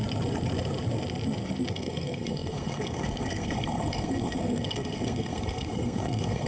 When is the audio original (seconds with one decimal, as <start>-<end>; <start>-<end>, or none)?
0.0-1.7